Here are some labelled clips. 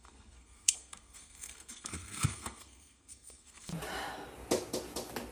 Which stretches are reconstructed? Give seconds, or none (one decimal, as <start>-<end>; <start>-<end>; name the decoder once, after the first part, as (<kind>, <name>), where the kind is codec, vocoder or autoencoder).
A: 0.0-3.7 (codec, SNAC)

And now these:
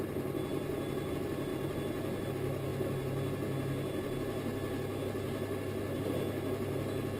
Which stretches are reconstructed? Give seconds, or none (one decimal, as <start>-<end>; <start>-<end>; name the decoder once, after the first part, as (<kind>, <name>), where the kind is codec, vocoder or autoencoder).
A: none

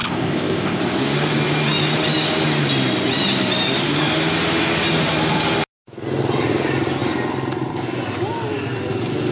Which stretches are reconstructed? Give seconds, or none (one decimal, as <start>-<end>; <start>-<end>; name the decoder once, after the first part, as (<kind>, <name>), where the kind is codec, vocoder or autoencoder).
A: 0.0-0.8 (codec, ZipCodec)

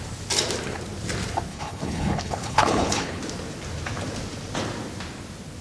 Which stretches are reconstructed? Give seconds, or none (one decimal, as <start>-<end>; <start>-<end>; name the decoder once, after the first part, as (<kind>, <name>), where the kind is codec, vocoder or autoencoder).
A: 1.5-3.2 (codec, HILCodec)

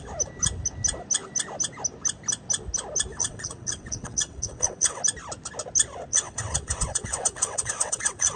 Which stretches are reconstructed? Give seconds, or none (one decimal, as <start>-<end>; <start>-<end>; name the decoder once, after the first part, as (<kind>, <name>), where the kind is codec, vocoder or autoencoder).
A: 3.1-5.0 (vocoder, WaveNeXt); 6.1-8.4

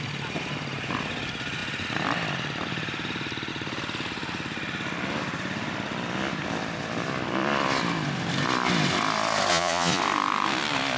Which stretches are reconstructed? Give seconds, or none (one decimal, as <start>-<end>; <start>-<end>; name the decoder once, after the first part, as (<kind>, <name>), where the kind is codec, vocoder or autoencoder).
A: 9.5-10.0 (vocoder, Vocos)

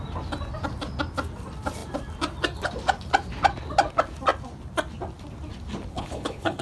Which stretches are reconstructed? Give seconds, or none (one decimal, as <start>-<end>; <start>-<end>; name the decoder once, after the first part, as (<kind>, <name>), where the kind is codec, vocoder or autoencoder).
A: 5.9-6.6 (codec, HILCodec)

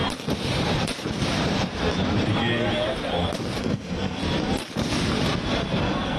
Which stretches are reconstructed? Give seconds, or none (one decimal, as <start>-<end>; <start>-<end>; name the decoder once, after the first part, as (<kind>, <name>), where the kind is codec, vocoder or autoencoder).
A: 3.6-4.2 (codec, SNAC); 5.8-6.2